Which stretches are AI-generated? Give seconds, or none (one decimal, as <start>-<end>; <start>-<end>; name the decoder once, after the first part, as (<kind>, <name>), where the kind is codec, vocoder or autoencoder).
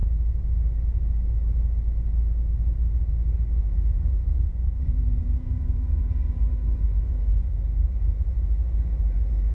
3.6-9.5 (vocoder, Vocos)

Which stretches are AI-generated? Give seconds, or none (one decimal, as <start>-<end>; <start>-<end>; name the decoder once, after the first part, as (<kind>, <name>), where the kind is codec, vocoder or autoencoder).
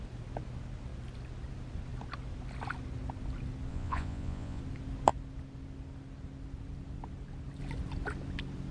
3.7-4.6 (vocoder, Vocos)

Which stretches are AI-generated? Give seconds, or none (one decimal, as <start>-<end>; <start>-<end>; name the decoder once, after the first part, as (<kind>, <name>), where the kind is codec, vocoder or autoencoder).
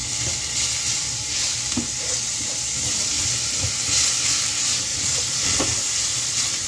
4.9-5.6 (vocoder, Vocos); 6.1-6.7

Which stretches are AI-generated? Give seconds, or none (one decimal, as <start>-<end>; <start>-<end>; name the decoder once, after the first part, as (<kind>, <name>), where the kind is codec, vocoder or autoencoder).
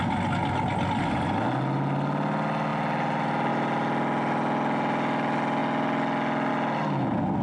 none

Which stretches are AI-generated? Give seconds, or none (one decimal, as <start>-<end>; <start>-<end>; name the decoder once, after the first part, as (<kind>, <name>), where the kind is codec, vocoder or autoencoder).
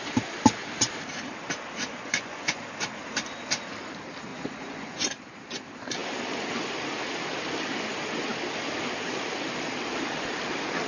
1.9-2.6 (vocoder, Vocos); 4.3-5.0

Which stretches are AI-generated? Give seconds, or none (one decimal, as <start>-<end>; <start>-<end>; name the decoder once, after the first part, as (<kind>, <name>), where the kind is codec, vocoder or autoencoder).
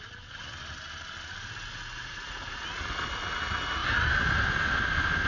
2.0-2.6 (vocoder, Vocos)